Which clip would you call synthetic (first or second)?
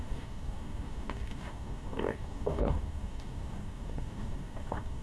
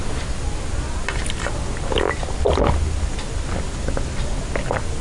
first